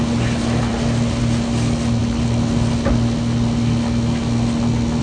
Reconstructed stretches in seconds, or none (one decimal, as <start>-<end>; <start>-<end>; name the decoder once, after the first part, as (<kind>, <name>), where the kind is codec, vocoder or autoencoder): none